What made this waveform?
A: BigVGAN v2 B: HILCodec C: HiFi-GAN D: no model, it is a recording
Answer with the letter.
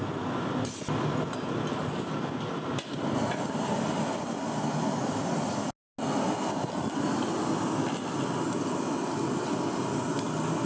D